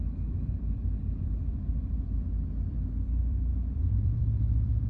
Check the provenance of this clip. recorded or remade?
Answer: remade